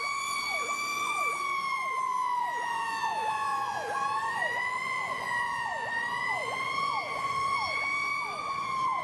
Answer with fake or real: fake